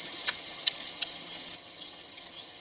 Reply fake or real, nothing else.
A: fake